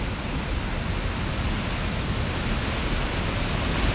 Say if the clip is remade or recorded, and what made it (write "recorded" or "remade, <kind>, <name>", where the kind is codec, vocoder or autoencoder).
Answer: recorded